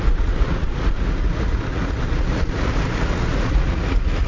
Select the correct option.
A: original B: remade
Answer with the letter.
B